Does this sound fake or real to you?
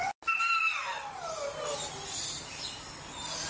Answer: real